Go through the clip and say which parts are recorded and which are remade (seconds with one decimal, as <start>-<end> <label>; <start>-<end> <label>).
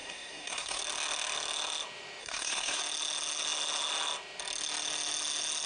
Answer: 0.0-0.8 remade; 0.8-2.2 recorded; 2.2-2.8 remade; 2.8-5.7 recorded